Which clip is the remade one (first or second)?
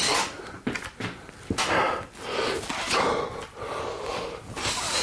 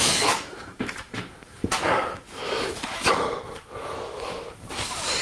second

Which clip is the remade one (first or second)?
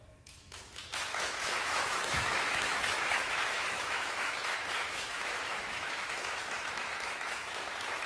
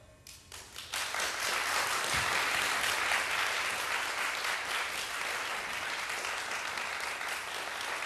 first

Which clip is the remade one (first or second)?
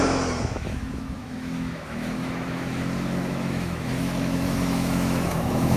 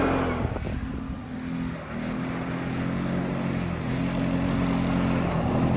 first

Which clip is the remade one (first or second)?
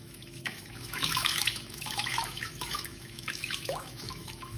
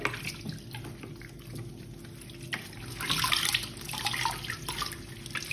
first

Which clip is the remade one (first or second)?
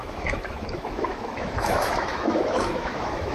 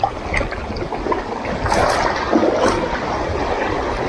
first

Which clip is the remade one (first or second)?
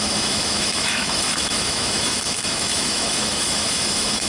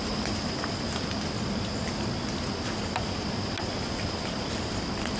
first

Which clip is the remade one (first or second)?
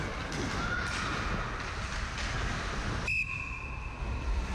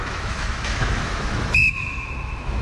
second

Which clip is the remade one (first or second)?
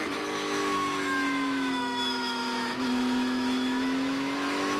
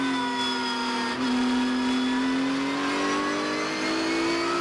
first